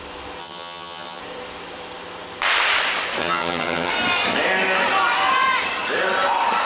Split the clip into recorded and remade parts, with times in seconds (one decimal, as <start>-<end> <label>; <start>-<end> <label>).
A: 0.0-0.4 recorded; 0.4-1.2 remade; 1.2-3.2 recorded; 3.2-3.9 remade; 3.9-6.7 recorded